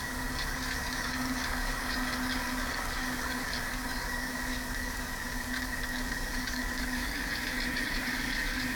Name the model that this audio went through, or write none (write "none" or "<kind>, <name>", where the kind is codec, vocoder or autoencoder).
codec, DAC